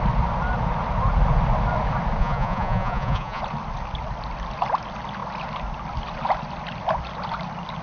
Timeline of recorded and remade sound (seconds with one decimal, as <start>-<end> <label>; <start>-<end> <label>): 0.0-2.2 recorded; 2.2-3.4 remade; 3.4-7.8 recorded